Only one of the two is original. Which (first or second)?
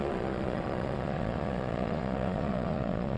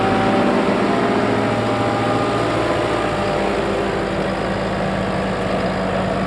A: second